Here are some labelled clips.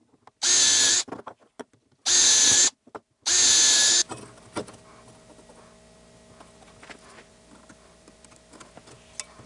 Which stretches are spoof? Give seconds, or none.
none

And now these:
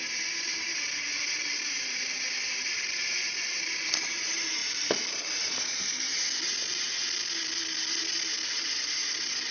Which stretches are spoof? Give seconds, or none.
0.0-4.6; 5.1-6.1; 8.6-9.5

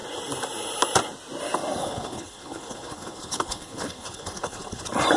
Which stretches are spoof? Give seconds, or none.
1.8-4.8

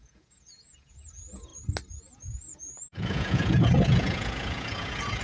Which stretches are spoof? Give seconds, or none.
0.0-1.5; 2.0-5.2

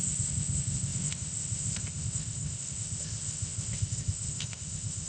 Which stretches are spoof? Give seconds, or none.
0.0-5.1

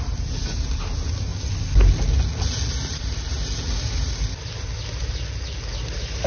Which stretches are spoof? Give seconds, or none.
none